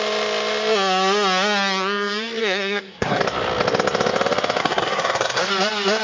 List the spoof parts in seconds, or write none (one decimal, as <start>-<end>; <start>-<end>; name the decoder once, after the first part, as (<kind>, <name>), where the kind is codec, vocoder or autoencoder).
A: 2.4-3.2 (codec, SNAC); 4.6-5.5